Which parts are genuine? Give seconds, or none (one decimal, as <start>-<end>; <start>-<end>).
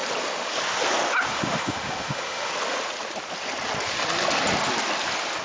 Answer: 0.0-1.3; 2.5-5.4